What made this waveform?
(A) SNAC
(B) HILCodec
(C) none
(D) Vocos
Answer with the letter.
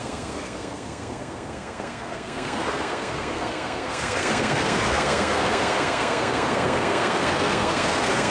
A